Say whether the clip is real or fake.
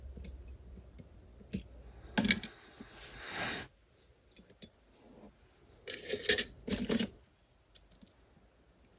real